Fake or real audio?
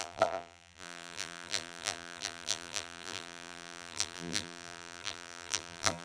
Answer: fake